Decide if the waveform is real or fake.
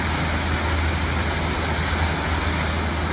real